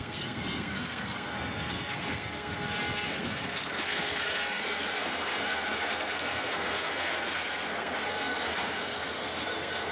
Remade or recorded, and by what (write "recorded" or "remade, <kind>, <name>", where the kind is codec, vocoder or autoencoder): remade, codec, SNAC